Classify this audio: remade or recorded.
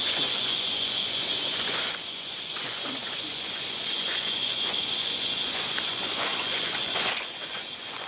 remade